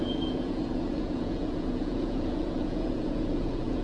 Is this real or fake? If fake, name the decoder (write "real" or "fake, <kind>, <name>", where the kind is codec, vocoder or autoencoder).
fake, vocoder, Vocos